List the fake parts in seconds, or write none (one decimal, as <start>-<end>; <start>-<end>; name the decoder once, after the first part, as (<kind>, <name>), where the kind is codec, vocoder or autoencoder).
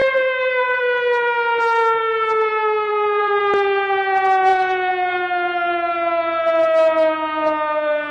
0.0-0.8 (vocoder, BigVGAN v2); 2.9-3.4